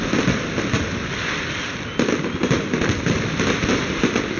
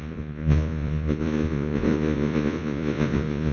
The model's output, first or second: second